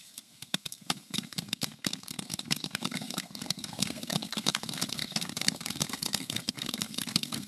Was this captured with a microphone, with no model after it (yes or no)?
no